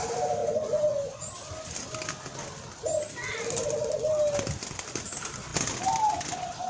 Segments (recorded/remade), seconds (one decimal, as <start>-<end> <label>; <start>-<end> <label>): 0.0-0.4 recorded; 0.4-1.3 remade; 1.3-6.7 recorded